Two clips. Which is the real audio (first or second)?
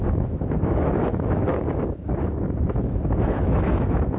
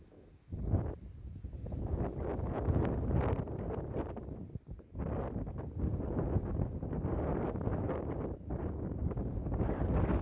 second